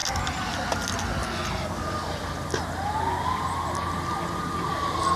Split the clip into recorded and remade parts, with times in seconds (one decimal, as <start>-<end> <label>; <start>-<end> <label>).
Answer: 0.0-5.2 recorded